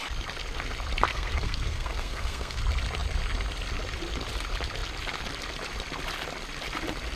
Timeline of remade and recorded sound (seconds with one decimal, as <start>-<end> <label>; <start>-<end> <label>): 0.0-1.1 recorded; 1.1-2.6 remade; 2.6-7.2 recorded

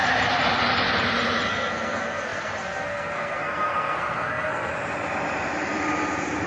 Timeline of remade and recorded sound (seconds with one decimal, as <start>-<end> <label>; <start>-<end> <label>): 0.0-1.5 recorded; 1.5-4.7 remade; 4.7-6.5 recorded